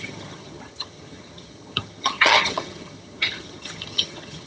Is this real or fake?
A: fake